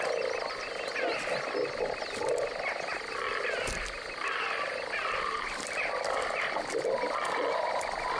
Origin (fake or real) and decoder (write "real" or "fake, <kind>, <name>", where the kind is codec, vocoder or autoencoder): real